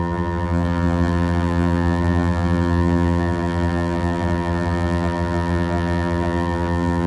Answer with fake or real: fake